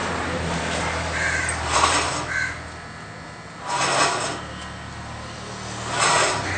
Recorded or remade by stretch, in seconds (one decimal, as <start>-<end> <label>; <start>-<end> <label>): 0.0-2.1 remade; 2.1-6.6 recorded